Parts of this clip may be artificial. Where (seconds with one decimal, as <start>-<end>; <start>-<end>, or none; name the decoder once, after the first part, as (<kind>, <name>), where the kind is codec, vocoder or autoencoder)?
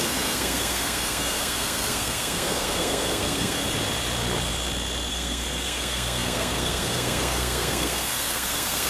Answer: 0.0-3.6 (codec, SNAC); 5.1-8.9